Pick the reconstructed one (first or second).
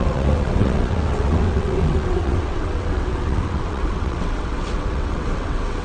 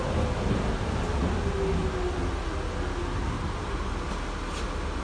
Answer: first